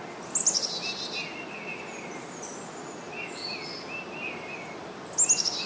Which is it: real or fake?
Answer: real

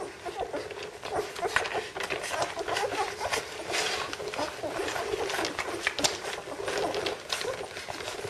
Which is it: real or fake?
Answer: real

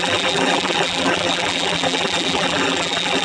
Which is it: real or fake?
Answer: fake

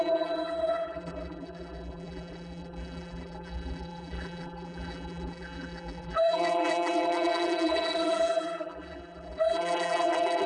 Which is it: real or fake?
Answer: fake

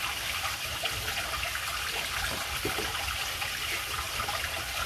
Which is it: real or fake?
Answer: fake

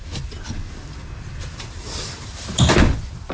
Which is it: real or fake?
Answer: fake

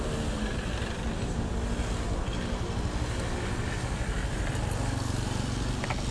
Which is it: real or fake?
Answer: real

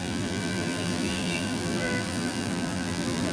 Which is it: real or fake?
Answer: fake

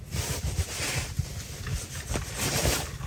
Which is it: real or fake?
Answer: real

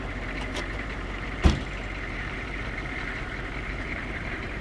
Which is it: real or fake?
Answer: fake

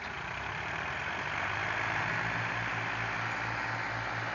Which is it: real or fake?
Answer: real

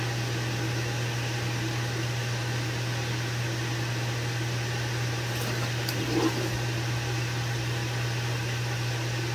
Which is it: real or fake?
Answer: real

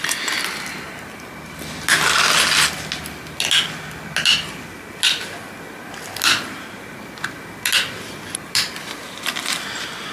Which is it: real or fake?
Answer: real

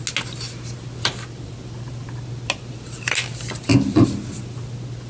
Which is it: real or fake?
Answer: real